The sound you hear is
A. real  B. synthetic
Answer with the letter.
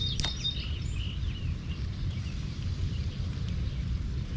A